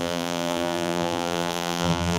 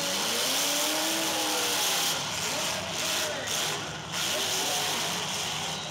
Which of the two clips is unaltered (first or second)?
second